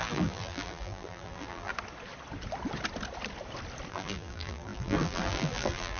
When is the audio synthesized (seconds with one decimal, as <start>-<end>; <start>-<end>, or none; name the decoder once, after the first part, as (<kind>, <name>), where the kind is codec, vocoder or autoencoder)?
0.0-1.7 (vocoder, BigVGAN v2); 3.9-6.0